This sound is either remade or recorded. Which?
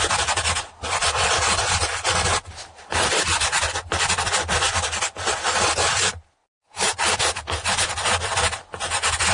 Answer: recorded